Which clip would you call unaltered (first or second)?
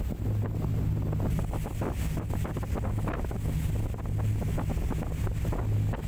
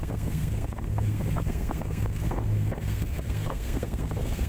first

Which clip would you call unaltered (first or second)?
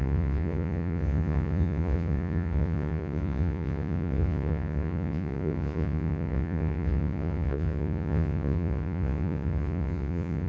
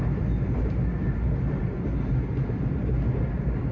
second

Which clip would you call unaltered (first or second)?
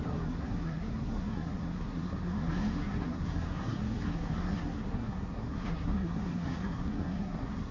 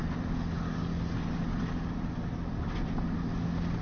second